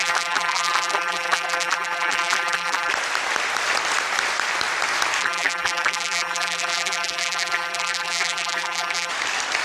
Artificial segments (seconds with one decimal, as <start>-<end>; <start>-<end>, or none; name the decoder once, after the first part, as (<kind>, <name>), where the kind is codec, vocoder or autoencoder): 0.0-2.9 (vocoder, BigVGAN v2); 5.2-9.1